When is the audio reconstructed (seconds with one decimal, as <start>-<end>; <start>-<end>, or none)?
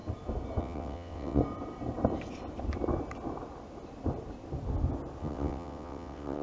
0.6-1.4; 5.2-6.4